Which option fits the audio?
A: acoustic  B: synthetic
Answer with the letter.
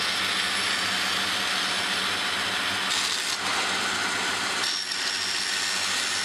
A